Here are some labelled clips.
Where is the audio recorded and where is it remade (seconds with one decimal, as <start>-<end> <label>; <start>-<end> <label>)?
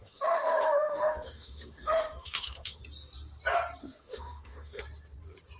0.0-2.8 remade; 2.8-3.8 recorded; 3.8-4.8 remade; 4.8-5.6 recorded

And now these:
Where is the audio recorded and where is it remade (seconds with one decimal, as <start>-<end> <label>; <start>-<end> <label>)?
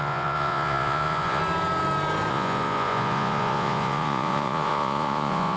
0.0-1.4 remade; 1.4-2.3 recorded; 2.3-5.6 remade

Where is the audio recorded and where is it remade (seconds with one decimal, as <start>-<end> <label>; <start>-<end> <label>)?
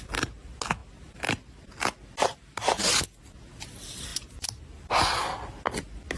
0.0-6.2 recorded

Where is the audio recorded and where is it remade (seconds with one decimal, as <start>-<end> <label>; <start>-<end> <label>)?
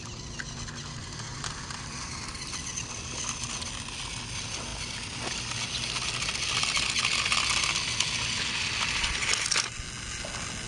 0.0-1.3 recorded; 1.3-3.2 remade; 3.2-10.7 recorded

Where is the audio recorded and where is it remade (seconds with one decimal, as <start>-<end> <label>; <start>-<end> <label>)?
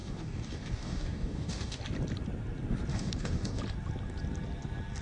0.0-1.8 remade; 1.8-2.9 recorded; 2.9-3.6 remade; 3.6-5.0 recorded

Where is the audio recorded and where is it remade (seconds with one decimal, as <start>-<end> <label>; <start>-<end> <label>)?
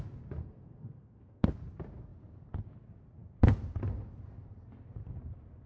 0.0-0.4 recorded; 0.4-1.5 remade; 1.5-5.7 recorded